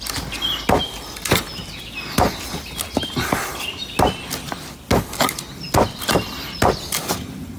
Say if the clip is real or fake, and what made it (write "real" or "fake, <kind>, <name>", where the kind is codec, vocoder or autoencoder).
real